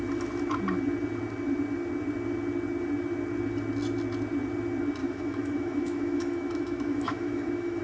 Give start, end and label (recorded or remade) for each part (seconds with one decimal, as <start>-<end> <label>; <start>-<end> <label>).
0.0-5.0 recorded; 5.0-7.8 remade